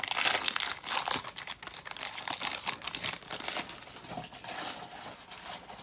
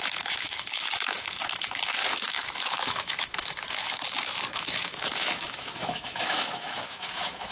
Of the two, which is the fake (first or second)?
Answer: second